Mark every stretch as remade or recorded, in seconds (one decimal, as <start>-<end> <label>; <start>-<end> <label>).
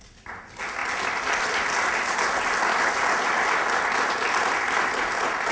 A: 0.0-5.5 recorded